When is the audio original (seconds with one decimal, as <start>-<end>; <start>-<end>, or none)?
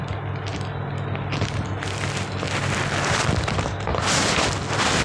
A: 0.0-5.0